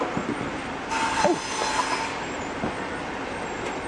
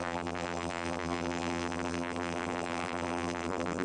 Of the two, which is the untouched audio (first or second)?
first